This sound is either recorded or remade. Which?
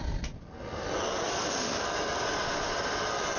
recorded